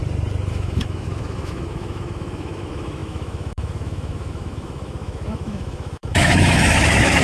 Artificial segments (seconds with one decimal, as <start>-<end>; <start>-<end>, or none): 0.5-7.2